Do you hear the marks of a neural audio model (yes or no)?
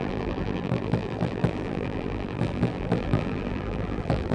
yes